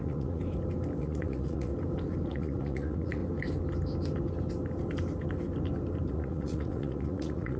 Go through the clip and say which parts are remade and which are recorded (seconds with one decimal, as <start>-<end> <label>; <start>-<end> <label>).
0.0-0.4 remade; 0.4-1.0 recorded; 1.0-1.7 remade; 1.7-2.3 recorded; 2.3-3.2 remade; 3.2-6.1 recorded; 6.1-7.6 remade